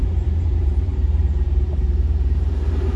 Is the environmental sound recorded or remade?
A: remade